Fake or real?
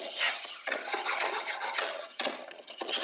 fake